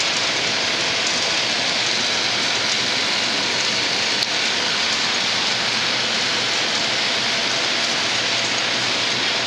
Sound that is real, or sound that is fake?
real